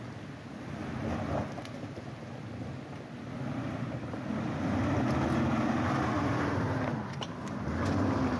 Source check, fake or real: real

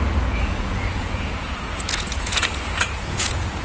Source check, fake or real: fake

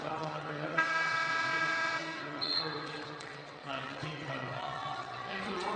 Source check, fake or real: fake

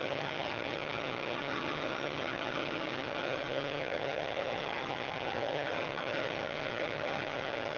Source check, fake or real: fake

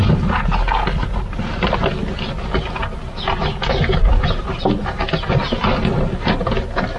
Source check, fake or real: real